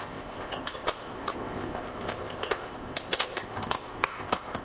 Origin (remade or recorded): remade